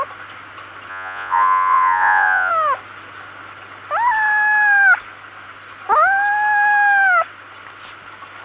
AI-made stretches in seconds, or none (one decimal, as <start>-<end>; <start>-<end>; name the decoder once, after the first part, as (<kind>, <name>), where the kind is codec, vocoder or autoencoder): 0.9-2.5 (vocoder, Vocos)